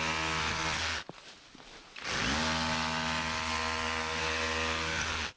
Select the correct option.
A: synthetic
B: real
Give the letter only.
B